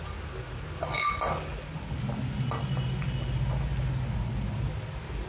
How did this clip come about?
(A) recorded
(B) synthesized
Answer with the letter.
A